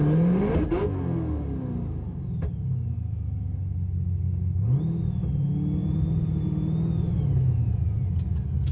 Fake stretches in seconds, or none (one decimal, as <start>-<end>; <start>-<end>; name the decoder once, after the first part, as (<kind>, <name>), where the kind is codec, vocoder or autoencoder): none